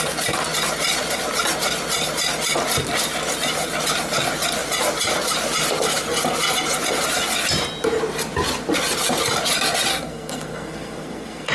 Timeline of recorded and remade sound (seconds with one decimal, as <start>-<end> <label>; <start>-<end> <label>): 0.0-9.9 recorded; 9.9-11.5 remade